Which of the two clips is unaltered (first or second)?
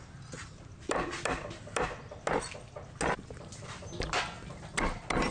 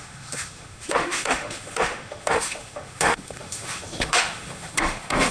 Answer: first